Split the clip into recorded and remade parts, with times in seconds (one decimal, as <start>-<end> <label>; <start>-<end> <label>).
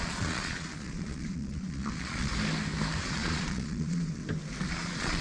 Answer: 0.0-2.3 remade; 2.3-3.0 recorded; 3.0-4.2 remade; 4.2-4.7 recorded; 4.7-5.2 remade